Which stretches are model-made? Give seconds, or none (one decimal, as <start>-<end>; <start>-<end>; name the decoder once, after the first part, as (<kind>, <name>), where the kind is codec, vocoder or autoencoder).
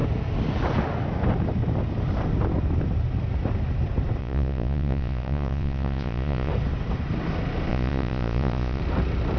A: 4.2-6.5 (vocoder, Vocos); 7.7-8.8